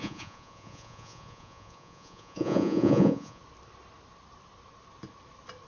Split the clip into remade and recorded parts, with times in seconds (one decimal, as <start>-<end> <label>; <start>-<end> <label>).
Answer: 0.0-3.4 remade; 3.4-5.7 recorded